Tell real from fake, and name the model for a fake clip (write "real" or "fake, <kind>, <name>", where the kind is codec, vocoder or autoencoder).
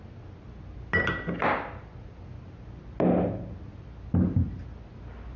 real